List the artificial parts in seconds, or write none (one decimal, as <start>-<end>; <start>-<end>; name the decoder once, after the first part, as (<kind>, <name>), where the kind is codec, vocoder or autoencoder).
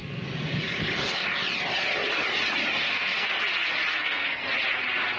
2.8-3.3 (codec, SNAC); 3.9-4.5